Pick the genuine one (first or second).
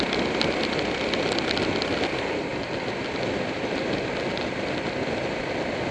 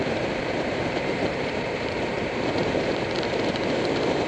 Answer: first